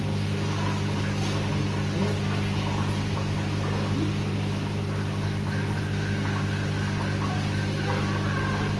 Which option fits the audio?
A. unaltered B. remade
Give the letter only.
A